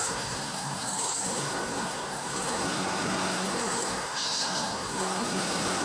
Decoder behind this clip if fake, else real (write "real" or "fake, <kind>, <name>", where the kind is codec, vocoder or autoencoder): fake, codec, SNAC